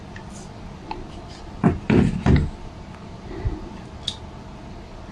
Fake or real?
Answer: real